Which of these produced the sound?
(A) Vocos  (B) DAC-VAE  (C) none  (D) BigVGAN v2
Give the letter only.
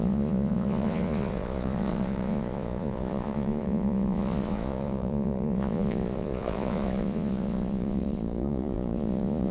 A